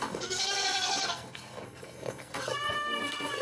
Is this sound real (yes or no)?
no